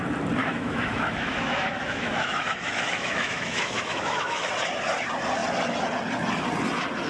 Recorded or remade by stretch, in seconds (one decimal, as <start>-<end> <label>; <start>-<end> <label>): 0.0-0.4 recorded; 0.4-4.5 remade; 4.5-7.1 recorded